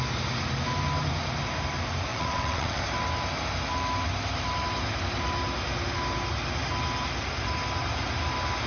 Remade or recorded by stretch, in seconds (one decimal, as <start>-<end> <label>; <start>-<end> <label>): 0.0-2.1 recorded; 2.1-2.8 remade; 2.8-8.7 recorded